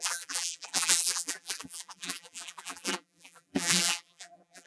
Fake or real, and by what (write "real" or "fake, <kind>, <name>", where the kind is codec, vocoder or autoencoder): fake, vocoder, BigVGAN v2